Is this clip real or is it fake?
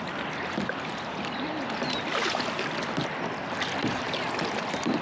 real